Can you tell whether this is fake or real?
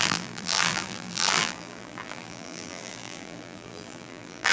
fake